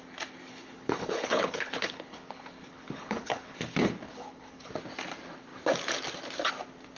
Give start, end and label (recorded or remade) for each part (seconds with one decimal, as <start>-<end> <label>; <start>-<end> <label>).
0.0-0.5 recorded; 0.5-4.7 remade; 4.7-7.0 recorded